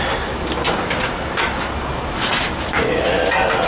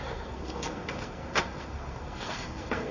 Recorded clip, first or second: first